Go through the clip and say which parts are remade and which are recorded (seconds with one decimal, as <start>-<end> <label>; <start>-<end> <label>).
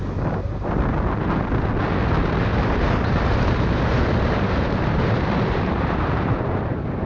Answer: 0.0-2.5 recorded; 2.5-7.1 remade